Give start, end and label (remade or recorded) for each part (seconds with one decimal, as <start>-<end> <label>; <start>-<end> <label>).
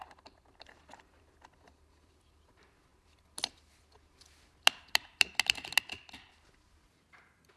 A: 0.0-7.6 recorded